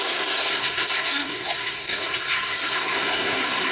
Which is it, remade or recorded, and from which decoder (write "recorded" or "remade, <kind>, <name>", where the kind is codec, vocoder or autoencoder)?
remade, codec, SNAC